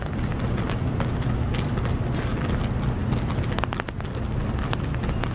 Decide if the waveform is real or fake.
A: real